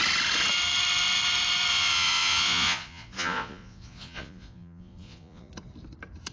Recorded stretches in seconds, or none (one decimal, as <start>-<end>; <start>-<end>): 0.0-1.7; 5.5-6.3

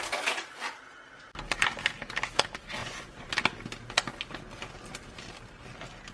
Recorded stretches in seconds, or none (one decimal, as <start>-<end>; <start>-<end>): 0.0-2.8; 3.3-6.1

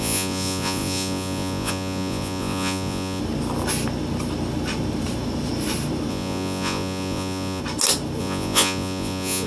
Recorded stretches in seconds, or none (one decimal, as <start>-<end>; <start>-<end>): 3.2-6.1; 7.6-8.2

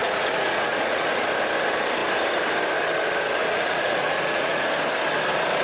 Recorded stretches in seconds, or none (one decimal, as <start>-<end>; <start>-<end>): 1.1-3.4; 4.7-5.6

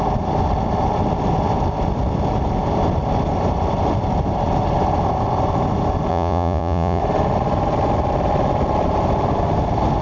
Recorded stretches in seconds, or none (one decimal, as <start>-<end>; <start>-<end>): 0.0-6.1; 7.0-10.0

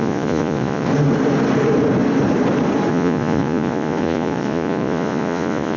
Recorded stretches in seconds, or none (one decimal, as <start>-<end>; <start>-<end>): 0.9-2.9